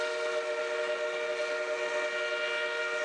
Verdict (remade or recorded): recorded